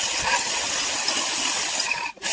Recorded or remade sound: recorded